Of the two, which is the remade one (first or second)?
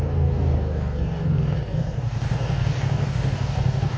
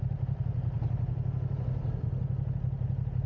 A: first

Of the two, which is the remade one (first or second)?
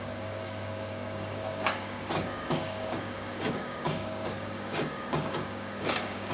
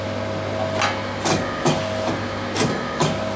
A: first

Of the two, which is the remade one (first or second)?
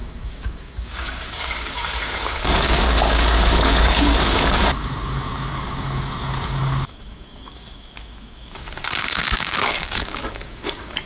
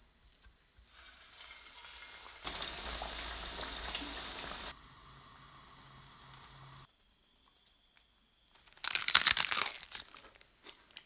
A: first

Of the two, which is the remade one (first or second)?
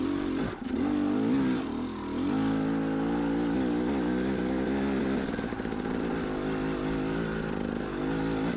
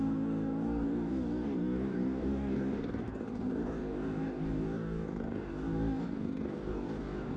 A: second